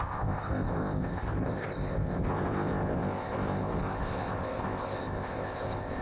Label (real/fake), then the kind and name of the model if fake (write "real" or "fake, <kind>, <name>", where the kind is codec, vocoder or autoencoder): fake, codec, ZipCodec